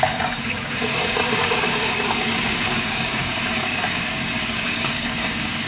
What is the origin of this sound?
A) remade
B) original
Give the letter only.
A